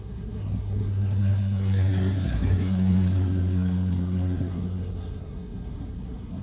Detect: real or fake fake